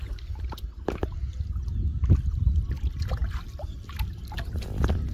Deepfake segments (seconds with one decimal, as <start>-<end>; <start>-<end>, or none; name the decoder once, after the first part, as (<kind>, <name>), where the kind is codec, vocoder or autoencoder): none